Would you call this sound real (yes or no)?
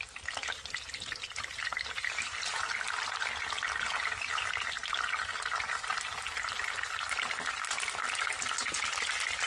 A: yes